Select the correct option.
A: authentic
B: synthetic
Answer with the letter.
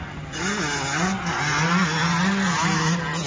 A